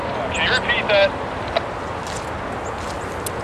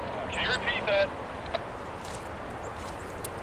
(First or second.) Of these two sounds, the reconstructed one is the second